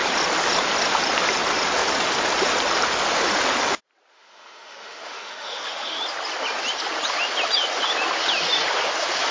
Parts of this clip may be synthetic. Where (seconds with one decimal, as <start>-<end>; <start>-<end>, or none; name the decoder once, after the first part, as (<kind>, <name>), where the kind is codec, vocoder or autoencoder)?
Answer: 4.1-6.0 (autoencoder, DAC-VAE)